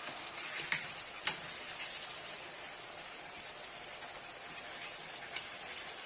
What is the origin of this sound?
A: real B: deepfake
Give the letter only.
A